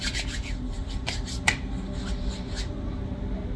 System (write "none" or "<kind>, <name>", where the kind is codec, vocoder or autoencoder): none